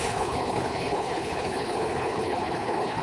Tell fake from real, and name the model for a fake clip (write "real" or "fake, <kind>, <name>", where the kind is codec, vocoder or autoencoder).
fake, codec, HILCodec